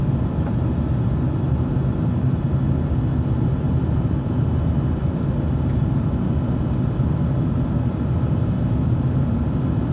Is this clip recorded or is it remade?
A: recorded